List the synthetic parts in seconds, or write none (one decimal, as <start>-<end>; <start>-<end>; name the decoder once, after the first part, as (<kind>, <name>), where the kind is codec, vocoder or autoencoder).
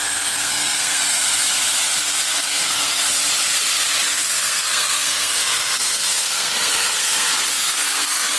0.0-1.0 (codec, SNAC); 2.0-3.0; 4.1-8.4